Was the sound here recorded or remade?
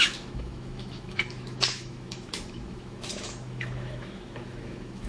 remade